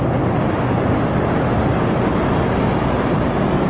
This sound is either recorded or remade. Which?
recorded